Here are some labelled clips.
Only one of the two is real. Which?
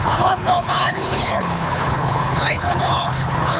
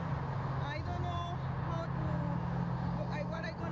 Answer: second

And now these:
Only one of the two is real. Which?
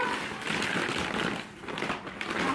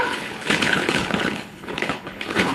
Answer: first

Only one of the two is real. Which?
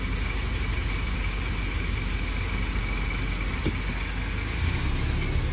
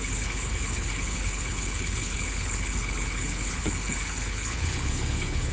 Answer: first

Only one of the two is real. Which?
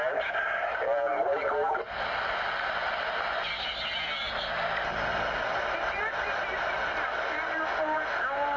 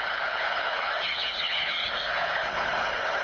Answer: first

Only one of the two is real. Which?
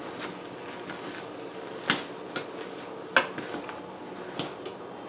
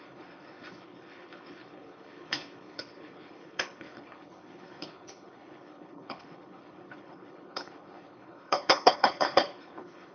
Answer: first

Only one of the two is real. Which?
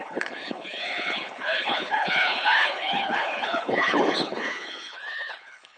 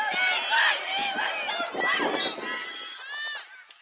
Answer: second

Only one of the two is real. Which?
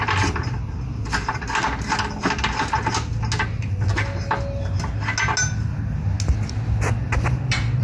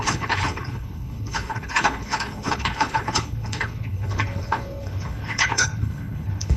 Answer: first